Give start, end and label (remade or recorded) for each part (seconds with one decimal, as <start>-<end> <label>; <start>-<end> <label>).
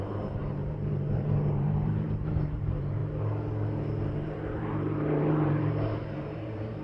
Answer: 0.0-3.0 remade; 3.0-4.0 recorded; 4.0-6.8 remade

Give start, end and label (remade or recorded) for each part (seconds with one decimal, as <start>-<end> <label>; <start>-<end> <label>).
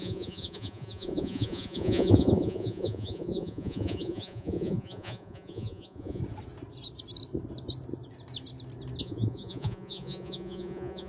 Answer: 0.0-6.2 remade; 6.2-9.0 recorded; 9.0-11.1 remade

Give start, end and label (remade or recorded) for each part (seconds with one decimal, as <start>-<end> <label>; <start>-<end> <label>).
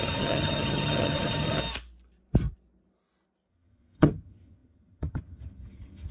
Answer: 0.0-1.6 remade; 1.6-3.5 recorded; 3.5-6.1 remade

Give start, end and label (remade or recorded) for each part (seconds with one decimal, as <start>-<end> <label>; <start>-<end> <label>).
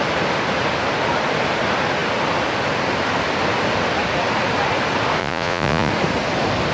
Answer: 0.0-5.2 recorded; 5.2-5.9 remade; 5.9-6.7 recorded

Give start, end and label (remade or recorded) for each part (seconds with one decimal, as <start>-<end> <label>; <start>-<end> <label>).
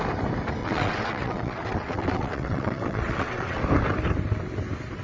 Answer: 0.0-0.6 recorded; 0.6-3.6 remade; 3.6-5.0 recorded